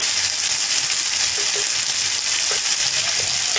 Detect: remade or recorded recorded